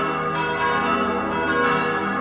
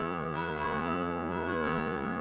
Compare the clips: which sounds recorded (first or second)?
first